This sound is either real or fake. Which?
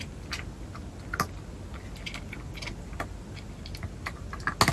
real